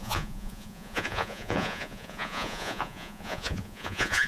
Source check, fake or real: fake